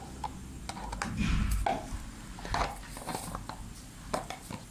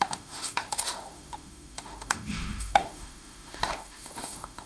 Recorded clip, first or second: first